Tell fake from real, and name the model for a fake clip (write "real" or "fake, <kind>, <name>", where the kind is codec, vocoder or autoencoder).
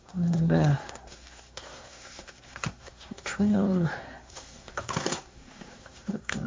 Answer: fake, codec, SNAC